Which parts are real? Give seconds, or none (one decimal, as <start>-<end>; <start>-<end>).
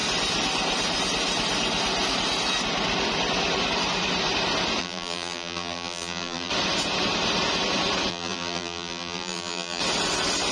0.0-4.8; 6.5-8.1; 9.8-10.5